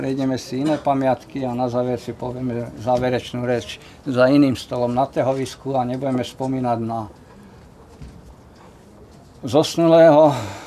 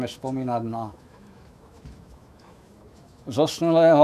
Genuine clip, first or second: first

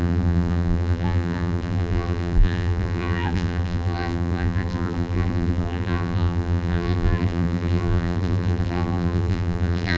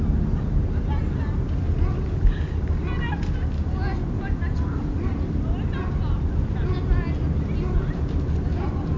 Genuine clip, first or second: second